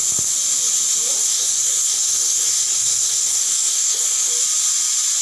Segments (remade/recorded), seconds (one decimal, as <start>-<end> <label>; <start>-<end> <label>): 0.0-1.2 recorded; 1.2-4.3 remade; 4.3-5.2 recorded